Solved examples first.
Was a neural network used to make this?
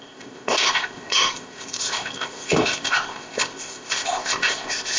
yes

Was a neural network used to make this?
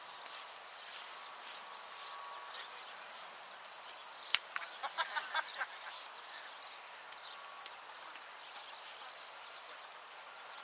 no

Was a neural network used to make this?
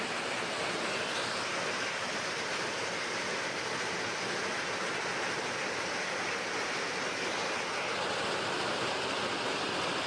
no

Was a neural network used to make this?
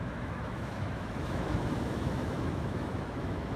yes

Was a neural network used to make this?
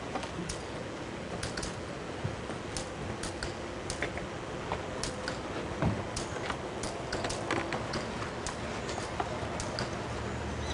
no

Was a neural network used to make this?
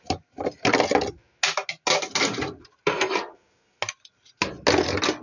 no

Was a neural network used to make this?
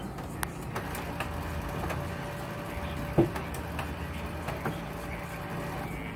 no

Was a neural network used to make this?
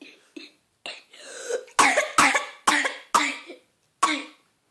no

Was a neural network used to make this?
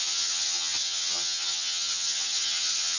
yes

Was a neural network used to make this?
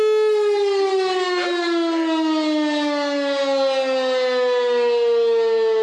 no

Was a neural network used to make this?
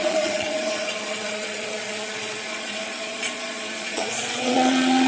yes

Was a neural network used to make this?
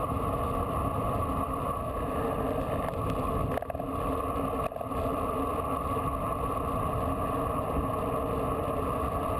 no